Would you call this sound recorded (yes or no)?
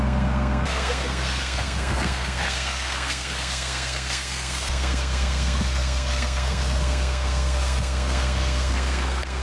no